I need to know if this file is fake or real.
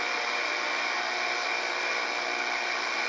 real